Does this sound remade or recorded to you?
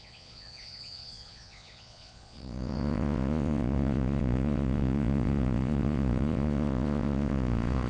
remade